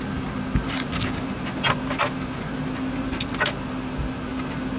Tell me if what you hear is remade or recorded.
recorded